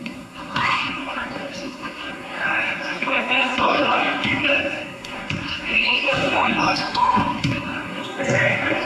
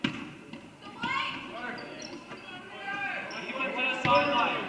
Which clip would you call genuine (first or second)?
second